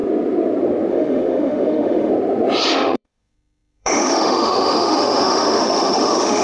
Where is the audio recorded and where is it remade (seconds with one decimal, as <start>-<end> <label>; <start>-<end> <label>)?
0.0-0.9 recorded; 0.9-2.1 remade; 2.1-2.7 recorded; 2.7-6.4 remade